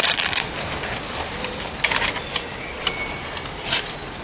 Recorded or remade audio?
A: recorded